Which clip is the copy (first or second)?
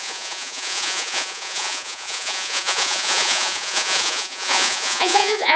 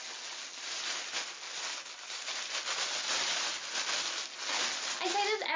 first